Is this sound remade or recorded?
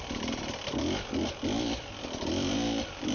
remade